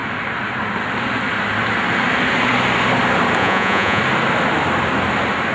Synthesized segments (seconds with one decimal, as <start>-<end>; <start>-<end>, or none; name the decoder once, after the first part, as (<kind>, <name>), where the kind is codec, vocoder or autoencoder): 3.4-4.0 (vocoder, Vocos)